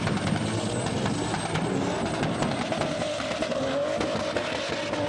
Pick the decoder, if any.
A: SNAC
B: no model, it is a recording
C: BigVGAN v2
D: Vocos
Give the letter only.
B